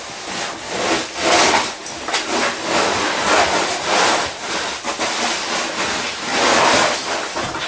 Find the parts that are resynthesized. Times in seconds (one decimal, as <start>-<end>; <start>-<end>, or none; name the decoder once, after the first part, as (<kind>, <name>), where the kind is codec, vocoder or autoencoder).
none